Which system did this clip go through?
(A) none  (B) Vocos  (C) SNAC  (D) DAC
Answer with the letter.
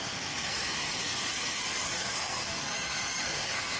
C